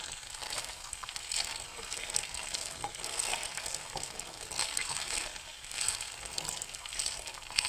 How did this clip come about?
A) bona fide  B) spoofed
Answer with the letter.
B